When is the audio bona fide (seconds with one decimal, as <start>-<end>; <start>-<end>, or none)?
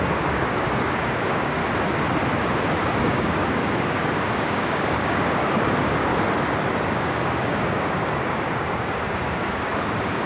1.6-3.0; 6.1-6.8